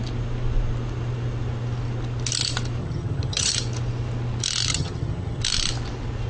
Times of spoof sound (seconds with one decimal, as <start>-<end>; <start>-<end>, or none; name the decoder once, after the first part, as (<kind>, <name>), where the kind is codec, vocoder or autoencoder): 2.8-3.5 (vocoder, HiFi-GAN); 4.7-5.4